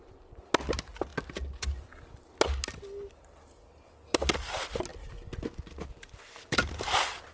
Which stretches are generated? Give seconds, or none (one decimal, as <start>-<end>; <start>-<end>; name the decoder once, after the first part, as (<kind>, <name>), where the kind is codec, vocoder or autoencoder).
none